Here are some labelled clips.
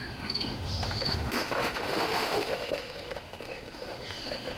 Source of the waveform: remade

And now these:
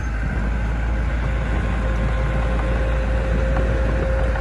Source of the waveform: recorded